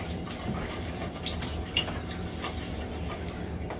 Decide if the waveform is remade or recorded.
remade